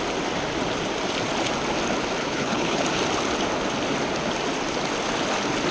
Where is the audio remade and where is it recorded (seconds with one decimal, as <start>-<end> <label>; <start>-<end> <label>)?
0.0-2.2 recorded; 2.2-2.8 remade; 2.8-5.7 recorded